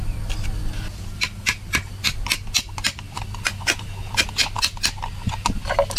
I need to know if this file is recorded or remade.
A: recorded